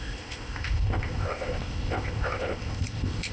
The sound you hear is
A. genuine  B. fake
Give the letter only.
B